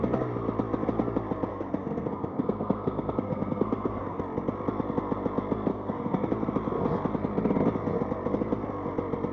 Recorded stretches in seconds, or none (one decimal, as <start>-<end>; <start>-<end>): 0.0-1.5; 4.2-5.7; 6.3-9.3